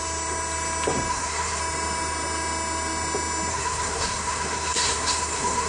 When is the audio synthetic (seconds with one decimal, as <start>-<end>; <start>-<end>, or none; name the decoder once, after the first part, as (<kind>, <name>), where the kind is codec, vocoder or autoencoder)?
1.1-1.6 (codec, SNAC); 3.5-5.7